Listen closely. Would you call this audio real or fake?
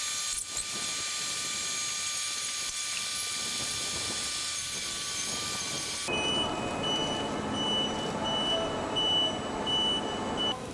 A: real